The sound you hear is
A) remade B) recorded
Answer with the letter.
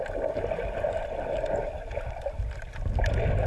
B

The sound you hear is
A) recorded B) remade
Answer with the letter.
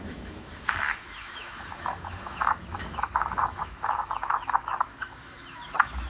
B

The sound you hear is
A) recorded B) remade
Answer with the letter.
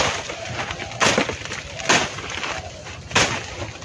A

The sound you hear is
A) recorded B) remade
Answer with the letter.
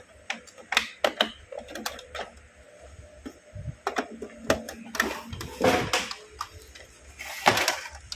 A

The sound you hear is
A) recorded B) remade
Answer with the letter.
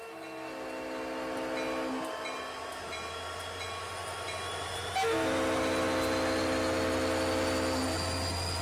A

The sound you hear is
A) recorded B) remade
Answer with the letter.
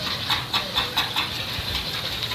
A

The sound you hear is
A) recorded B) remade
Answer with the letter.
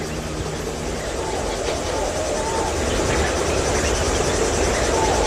A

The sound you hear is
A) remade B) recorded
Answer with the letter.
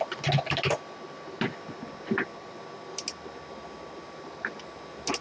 B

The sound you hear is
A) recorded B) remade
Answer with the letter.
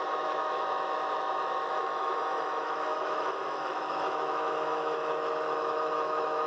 B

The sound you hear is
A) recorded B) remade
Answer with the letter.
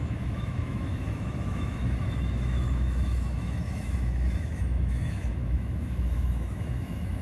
B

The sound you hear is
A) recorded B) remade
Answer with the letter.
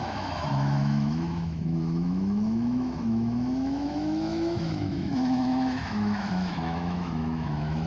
B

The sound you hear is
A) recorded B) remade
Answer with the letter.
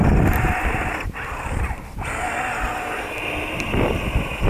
A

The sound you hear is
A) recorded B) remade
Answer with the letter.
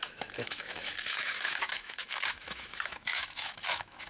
B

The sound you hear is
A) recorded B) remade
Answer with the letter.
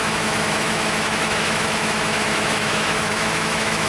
B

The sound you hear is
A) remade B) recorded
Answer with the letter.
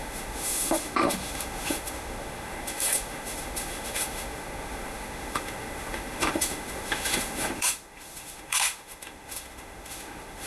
A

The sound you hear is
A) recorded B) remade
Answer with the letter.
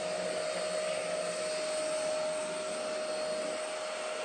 A